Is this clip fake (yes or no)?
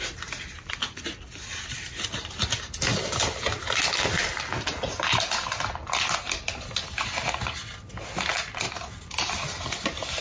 no